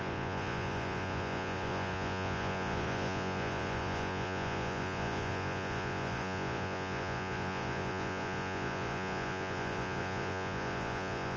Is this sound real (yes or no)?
no